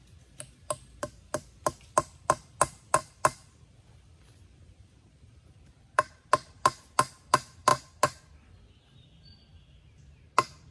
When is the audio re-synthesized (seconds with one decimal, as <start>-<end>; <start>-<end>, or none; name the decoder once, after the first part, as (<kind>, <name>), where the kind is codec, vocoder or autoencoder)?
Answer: 3.4-6.6 (vocoder, BigVGAN v2)